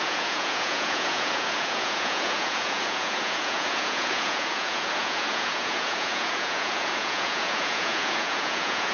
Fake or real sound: fake